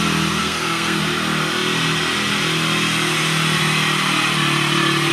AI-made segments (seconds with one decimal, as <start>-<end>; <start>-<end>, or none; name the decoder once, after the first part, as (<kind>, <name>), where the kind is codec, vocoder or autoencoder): 0.4-1.0 (codec, SNAC)